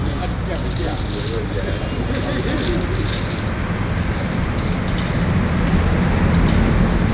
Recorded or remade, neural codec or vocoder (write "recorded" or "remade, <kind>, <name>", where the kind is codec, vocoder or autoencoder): recorded